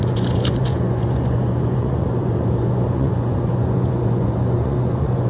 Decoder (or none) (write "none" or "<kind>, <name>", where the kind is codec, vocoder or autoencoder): vocoder, Vocos